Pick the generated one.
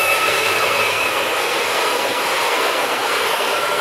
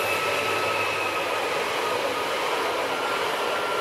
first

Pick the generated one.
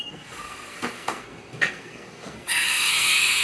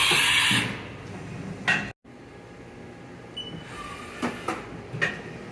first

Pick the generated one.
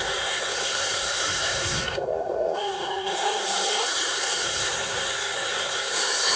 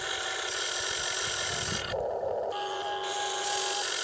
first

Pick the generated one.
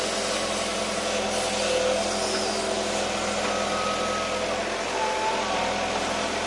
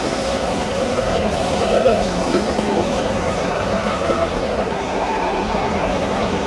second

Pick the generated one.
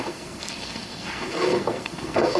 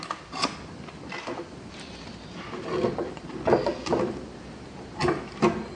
first